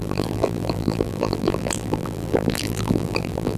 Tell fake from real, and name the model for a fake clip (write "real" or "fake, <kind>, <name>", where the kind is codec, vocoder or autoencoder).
fake, vocoder, BigVGAN v2